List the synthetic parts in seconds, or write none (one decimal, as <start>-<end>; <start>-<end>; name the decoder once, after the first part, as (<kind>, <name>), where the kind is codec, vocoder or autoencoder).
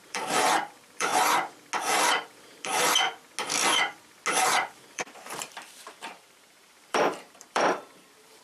0.0-1.1 (vocoder, BigVGAN v2); 2.0-2.7; 4.4-8.4